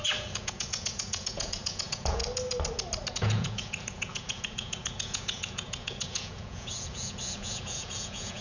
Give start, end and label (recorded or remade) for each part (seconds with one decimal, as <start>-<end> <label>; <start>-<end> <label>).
0.0-2.2 remade; 2.2-3.1 recorded; 3.1-8.4 remade